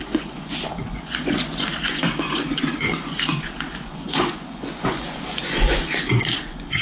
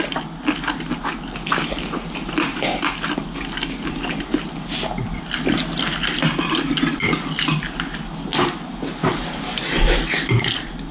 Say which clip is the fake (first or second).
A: first